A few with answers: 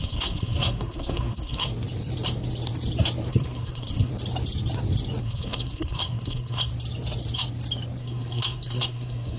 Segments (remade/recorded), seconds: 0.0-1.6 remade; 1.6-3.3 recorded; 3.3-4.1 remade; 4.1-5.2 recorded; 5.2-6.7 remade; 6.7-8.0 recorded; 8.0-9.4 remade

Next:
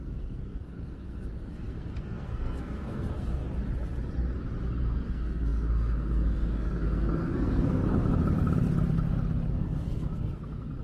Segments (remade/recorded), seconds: 0.0-3.4 remade; 3.4-4.8 recorded; 4.8-7.8 remade; 7.8-9.5 recorded; 9.5-10.8 remade

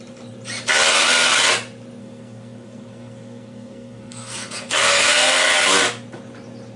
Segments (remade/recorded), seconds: 0.0-2.0 recorded; 2.0-5.5 remade; 5.5-6.8 recorded

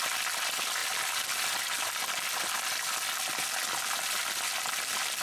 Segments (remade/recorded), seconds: 0.0-5.2 recorded

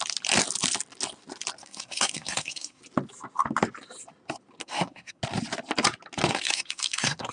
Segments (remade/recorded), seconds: 0.0-1.6 recorded; 1.6-2.8 remade; 2.8-4.6 recorded; 4.6-5.2 remade; 5.2-6.3 recorded; 6.3-7.3 remade

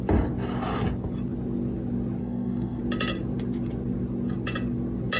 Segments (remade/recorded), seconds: 0.0-2.2 recorded; 2.2-2.8 remade; 2.8-5.2 recorded